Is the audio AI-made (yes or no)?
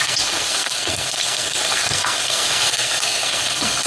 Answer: yes